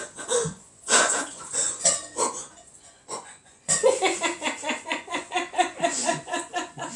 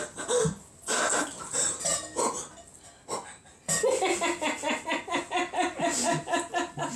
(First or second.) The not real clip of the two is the first